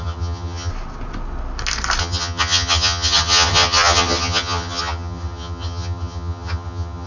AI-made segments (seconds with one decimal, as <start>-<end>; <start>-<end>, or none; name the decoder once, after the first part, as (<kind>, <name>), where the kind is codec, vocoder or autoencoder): 0.0-0.7 (vocoder, HiFi-GAN); 2.0-7.1